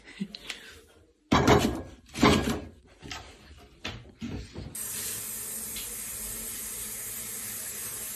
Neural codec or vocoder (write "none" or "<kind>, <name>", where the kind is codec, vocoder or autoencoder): none